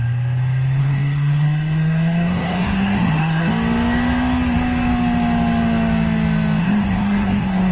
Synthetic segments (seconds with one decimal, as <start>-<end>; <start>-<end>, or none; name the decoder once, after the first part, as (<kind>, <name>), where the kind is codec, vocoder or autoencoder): 0.8-3.5 (codec, SNAC); 6.6-7.7